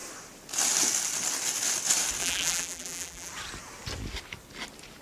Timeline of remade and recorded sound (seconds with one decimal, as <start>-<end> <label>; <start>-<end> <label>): 0.0-2.2 recorded; 2.2-3.3 remade; 3.3-5.0 recorded